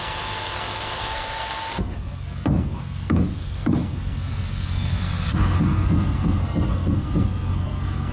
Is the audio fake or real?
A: fake